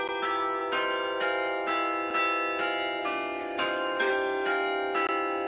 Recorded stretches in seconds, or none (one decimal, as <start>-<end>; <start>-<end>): 0.0-3.4; 4.1-5.5